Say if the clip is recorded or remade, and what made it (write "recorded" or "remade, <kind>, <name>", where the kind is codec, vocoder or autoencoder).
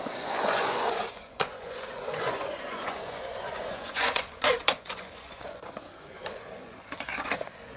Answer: remade, vocoder, Vocos